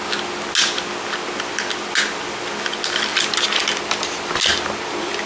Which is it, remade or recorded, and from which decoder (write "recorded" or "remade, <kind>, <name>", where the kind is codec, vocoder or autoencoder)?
recorded